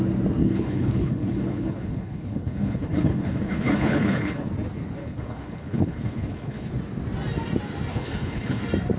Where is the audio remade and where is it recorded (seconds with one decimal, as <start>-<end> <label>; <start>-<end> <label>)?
0.0-0.4 recorded; 0.4-4.5 remade; 4.5-5.0 recorded; 5.0-6.7 remade; 6.7-7.9 recorded; 7.9-8.6 remade; 8.6-9.0 recorded